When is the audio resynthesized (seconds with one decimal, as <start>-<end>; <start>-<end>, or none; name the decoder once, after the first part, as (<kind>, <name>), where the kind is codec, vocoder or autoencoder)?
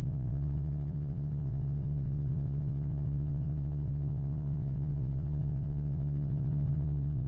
0.0-7.3 (vocoder, WaveNeXt)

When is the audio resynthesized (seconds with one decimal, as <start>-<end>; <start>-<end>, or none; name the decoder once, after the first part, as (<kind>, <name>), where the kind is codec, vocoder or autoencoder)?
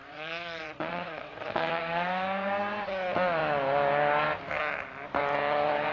0.0-1.8 (vocoder, WaveNeXt)